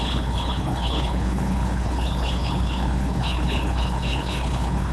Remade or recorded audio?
remade